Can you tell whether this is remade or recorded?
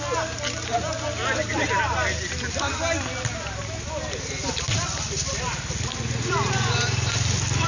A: recorded